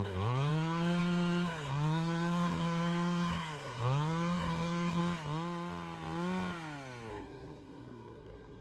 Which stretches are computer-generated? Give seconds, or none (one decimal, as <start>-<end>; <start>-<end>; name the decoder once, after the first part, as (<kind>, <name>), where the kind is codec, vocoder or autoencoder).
0.0-5.0 (codec, SNAC); 7.1-8.6